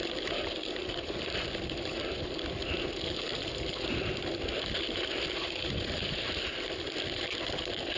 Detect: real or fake real